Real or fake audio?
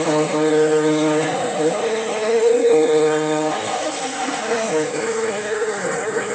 fake